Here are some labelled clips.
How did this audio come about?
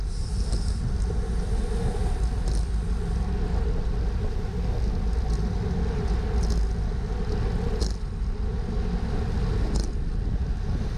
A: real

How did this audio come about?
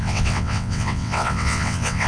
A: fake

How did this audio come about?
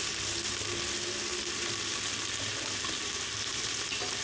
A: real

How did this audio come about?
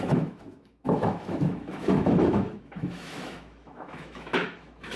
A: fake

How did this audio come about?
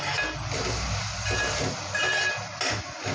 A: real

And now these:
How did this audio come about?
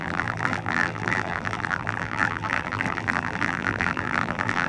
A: fake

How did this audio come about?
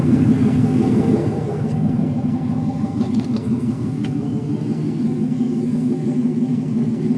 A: fake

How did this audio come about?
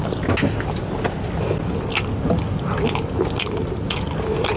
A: real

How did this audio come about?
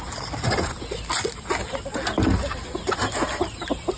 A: real